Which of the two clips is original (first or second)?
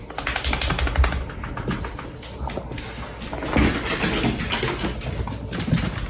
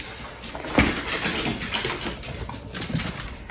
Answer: first